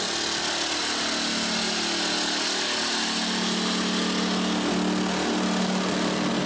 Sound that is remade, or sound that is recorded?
recorded